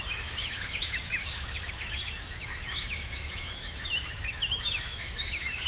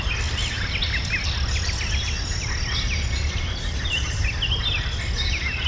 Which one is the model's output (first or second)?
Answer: first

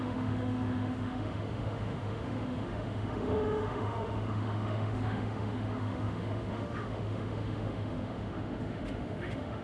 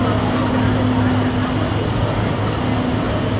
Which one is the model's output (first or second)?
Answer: first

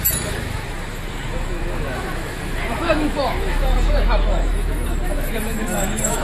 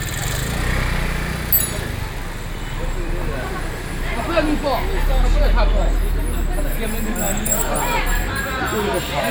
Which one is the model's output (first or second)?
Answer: first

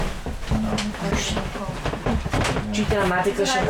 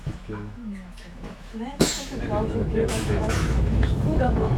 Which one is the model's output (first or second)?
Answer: second